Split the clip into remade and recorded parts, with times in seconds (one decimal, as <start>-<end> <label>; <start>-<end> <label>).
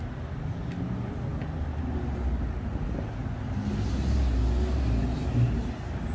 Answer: 0.0-6.1 recorded